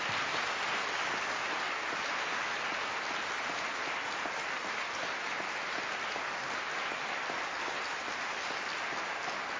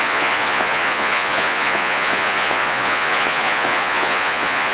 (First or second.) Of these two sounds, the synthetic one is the second